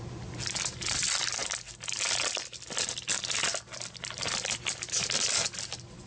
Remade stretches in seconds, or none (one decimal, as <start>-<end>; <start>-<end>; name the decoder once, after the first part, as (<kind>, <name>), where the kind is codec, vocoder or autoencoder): none